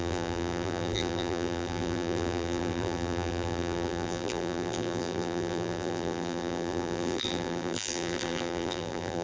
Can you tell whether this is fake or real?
fake